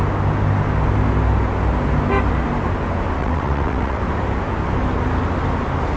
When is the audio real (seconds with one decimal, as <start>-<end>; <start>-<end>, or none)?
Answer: 0.0-3.2; 4.0-6.0